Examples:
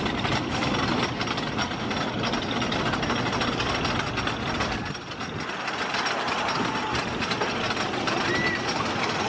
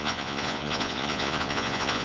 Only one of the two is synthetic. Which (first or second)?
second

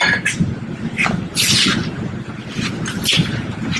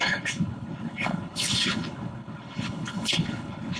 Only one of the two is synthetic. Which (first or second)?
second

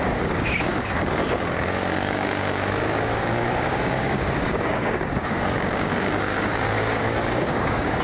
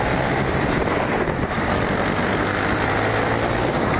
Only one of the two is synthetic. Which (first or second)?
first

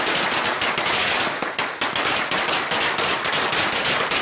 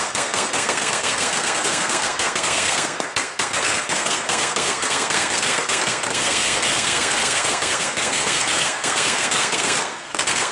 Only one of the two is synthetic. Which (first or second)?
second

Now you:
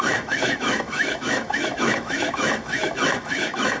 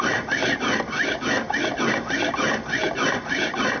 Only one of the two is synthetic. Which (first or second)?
first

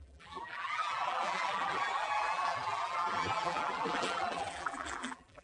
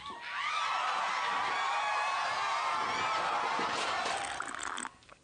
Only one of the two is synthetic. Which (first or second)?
first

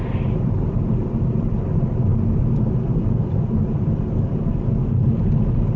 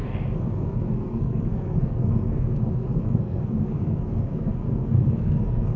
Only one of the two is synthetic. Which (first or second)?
second